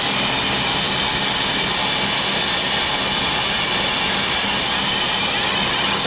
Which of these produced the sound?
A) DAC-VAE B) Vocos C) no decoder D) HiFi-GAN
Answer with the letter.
C